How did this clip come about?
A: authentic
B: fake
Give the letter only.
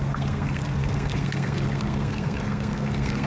B